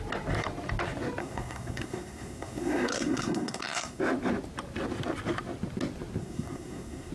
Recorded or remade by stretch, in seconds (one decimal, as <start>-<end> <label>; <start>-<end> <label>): 0.0-1.2 recorded; 1.2-4.0 remade; 4.0-6.2 recorded; 6.2-7.1 remade

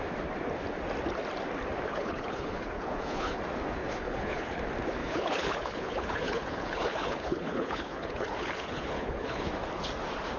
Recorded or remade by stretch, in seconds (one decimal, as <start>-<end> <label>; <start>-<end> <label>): 0.0-1.9 recorded; 1.9-3.4 remade; 3.4-3.8 recorded; 3.8-4.6 remade; 4.6-5.0 recorded; 5.0-9.5 remade; 9.5-10.4 recorded

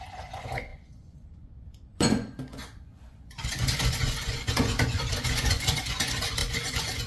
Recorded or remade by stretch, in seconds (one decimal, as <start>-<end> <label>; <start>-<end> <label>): 0.0-7.1 remade

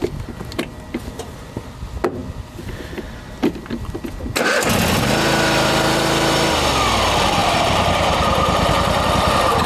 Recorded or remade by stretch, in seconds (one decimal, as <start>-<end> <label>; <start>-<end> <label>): 0.0-7.4 recorded; 7.4-8.7 remade; 8.7-9.7 recorded

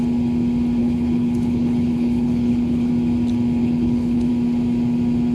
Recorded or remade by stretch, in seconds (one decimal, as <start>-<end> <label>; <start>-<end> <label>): 0.0-0.8 recorded; 0.8-2.9 remade; 2.9-3.6 recorded; 3.6-4.3 remade; 4.3-5.3 recorded

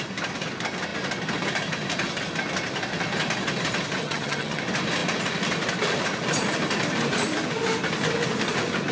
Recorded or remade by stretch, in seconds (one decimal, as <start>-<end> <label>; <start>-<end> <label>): 0.0-4.0 recorded; 4.0-4.6 remade; 4.6-8.9 recorded

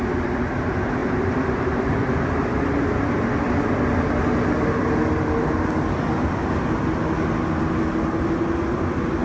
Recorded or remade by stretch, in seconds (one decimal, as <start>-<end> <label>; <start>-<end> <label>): 0.0-1.0 recorded; 1.0-2.6 remade; 2.6-9.2 recorded

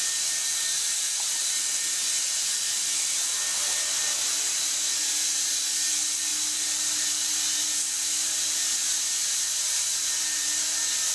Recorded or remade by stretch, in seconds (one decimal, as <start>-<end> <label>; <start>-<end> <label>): 0.0-11.1 recorded